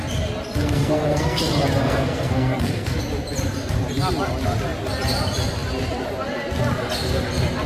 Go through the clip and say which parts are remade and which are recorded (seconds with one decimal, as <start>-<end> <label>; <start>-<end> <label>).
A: 0.0-0.6 recorded; 0.6-1.4 remade; 1.4-1.8 recorded; 1.8-3.0 remade; 3.0-7.7 recorded